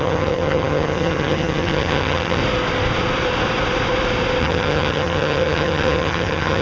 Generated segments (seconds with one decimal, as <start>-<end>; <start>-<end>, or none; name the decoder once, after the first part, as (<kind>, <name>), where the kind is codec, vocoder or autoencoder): 0.0-2.4 (vocoder, HiFi-GAN); 4.4-6.6